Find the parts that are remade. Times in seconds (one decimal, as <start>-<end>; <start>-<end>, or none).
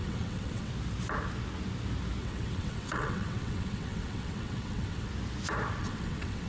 0.0-0.7; 2.2-5.1; 5.8-6.5